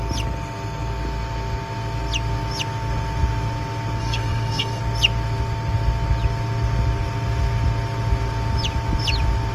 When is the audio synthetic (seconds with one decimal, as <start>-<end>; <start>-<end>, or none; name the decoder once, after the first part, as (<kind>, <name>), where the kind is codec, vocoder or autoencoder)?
4.0-4.8 (codec, SNAC)